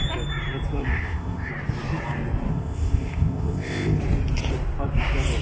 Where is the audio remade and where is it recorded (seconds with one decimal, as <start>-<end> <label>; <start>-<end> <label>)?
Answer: 0.0-0.8 recorded; 0.8-1.5 remade; 1.5-2.5 recorded; 2.5-4.0 remade; 4.0-5.4 recorded